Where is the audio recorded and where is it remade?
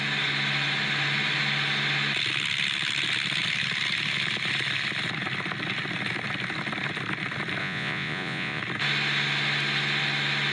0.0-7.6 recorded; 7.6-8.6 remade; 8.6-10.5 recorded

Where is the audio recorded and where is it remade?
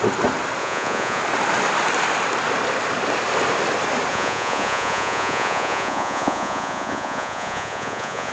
0.0-0.6 recorded; 0.6-1.2 remade; 1.2-4.1 recorded; 4.1-8.3 remade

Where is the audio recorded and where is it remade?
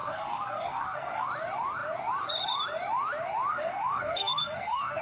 0.0-1.3 remade; 1.3-3.5 recorded; 3.5-5.0 remade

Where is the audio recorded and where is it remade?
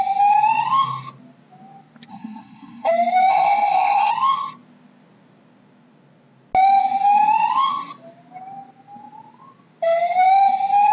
0.0-2.1 recorded; 2.1-2.9 remade; 2.9-3.3 recorded; 3.3-4.1 remade; 4.1-10.9 recorded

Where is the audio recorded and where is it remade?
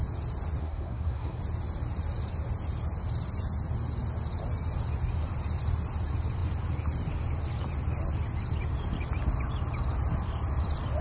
0.0-0.6 recorded; 0.6-1.4 remade; 1.4-11.0 recorded